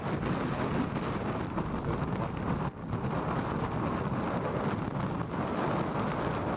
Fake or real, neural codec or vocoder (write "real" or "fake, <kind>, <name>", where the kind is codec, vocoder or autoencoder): real